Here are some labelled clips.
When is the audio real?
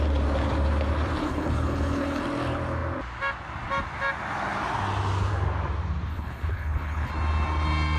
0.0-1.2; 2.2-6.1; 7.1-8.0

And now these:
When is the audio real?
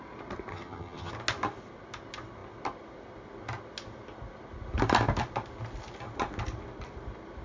0.0-0.5; 1.1-7.4